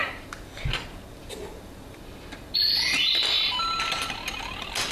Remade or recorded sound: recorded